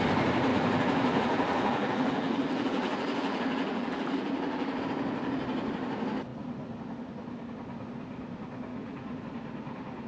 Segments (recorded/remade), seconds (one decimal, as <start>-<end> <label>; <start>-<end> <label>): 0.0-0.5 recorded; 0.5-4.8 remade; 4.8-8.7 recorded; 8.7-9.2 remade; 9.2-10.1 recorded

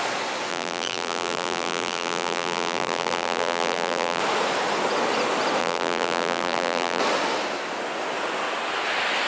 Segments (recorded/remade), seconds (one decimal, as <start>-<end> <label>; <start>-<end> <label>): 0.0-0.5 recorded; 0.5-4.2 remade; 4.2-5.6 recorded; 5.6-7.0 remade; 7.0-9.3 recorded

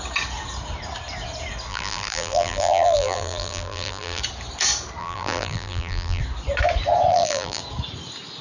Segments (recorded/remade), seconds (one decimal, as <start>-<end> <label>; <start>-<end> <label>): 0.0-1.7 recorded; 1.7-4.2 remade; 4.2-5.0 recorded; 5.0-6.2 remade; 6.2-7.1 recorded; 7.1-7.6 remade; 7.6-8.4 recorded

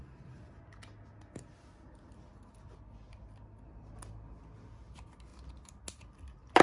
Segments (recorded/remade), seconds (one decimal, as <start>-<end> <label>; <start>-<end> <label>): 0.0-6.6 recorded

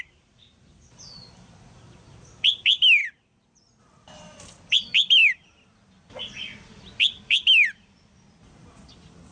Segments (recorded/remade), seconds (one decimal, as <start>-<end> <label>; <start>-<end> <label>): 0.0-3.0 remade; 3.0-3.8 recorded; 3.8-9.3 remade

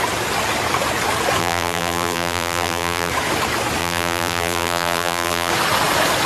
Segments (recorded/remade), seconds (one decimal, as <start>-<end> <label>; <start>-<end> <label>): 0.0-1.4 recorded; 1.4-3.1 remade; 3.1-3.8 recorded; 3.8-5.5 remade; 5.5-6.3 recorded